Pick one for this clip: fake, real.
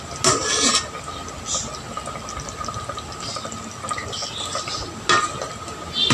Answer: real